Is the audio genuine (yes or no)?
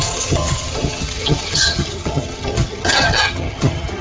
no